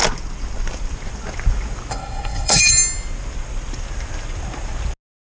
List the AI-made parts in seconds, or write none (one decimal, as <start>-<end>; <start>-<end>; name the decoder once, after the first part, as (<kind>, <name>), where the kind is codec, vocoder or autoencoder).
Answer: 1.9-2.6 (codec, SNAC)